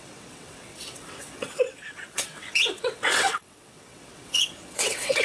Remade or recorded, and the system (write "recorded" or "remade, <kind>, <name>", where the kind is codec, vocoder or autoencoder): remade, vocoder, WaveNeXt